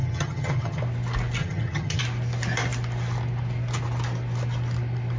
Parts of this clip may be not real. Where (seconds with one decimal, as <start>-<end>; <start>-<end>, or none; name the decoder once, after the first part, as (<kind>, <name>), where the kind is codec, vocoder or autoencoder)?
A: 0.0-0.8 (vocoder, HiFi-GAN); 1.4-2.0